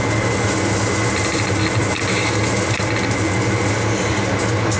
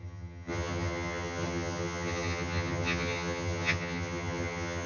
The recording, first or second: first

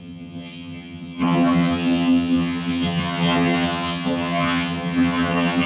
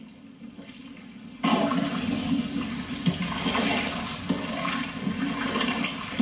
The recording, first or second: second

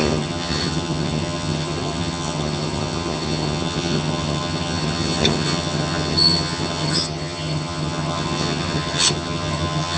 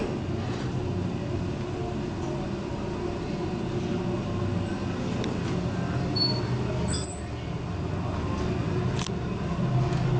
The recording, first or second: second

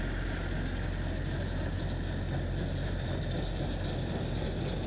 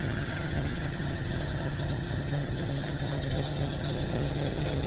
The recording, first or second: first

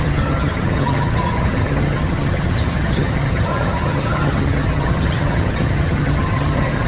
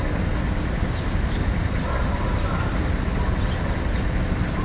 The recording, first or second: second